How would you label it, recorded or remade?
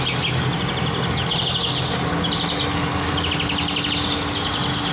recorded